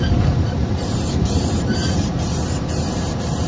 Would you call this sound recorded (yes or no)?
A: no